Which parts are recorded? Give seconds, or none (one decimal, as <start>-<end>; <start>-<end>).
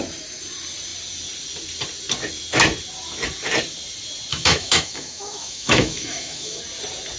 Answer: 0.0-4.3; 6.6-7.2